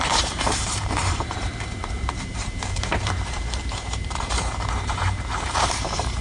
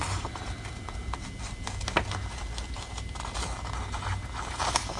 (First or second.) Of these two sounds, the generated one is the first